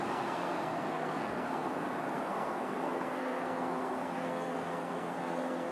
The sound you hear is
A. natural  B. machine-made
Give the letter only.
B